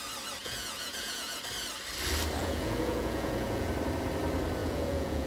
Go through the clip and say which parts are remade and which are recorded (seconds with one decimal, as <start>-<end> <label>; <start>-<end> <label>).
0.0-0.4 recorded; 0.4-1.4 remade; 1.4-2.4 recorded; 2.4-3.7 remade; 3.7-4.6 recorded; 4.6-5.3 remade